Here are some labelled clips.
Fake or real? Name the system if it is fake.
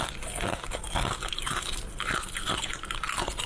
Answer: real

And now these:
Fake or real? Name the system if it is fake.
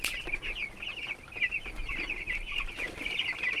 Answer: real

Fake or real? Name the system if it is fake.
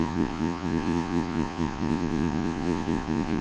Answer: fake, vocoder, Vocos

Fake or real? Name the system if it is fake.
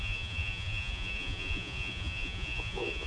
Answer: fake, vocoder, Vocos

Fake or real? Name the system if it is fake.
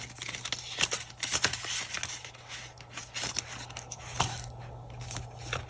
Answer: real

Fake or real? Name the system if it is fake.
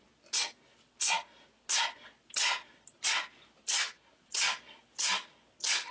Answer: real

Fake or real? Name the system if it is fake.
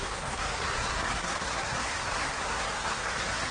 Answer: fake, codec, SNAC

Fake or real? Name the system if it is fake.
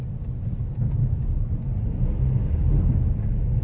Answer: real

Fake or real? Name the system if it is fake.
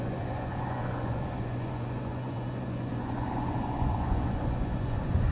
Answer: fake, vocoder, Vocos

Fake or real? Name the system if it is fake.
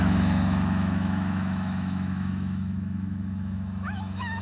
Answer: fake, autoencoder, DAC-VAE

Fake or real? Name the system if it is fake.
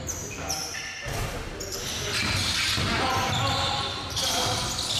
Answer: real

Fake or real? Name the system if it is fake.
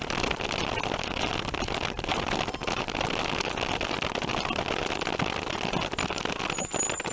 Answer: real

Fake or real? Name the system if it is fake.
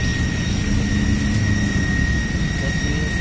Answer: real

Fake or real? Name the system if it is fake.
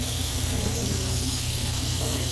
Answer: fake, codec, SNAC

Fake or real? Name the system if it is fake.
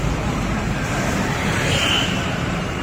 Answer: fake, vocoder, BigVGAN v2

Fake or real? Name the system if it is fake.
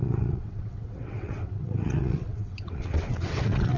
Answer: fake, vocoder, WaveNeXt